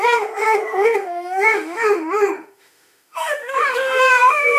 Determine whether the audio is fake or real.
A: fake